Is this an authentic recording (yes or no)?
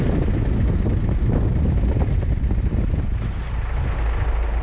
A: yes